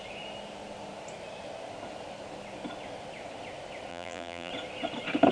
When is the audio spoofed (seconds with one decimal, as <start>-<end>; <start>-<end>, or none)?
3.9-4.5